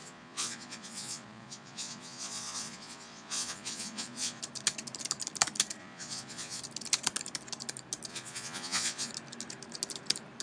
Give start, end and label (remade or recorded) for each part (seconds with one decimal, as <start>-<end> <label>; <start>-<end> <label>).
0.0-4.4 remade; 4.4-5.8 recorded; 5.8-6.6 remade; 6.6-8.1 recorded; 8.1-9.1 remade; 9.1-10.4 recorded